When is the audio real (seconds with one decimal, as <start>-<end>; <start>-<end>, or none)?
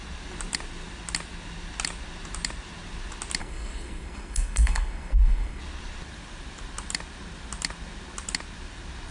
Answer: 0.0-3.4; 5.6-9.1